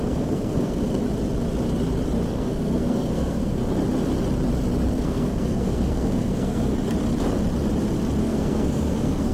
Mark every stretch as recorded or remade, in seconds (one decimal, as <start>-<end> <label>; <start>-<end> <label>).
0.0-1.0 remade; 1.0-2.3 recorded; 2.3-3.6 remade; 3.6-4.9 recorded; 4.9-6.7 remade; 6.7-8.2 recorded; 8.2-9.3 remade